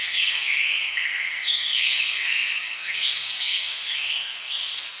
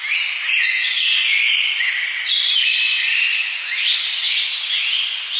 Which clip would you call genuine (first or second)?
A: second